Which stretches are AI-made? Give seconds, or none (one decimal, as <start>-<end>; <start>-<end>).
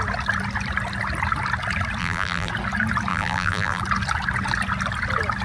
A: 2.0-2.5; 3.1-3.8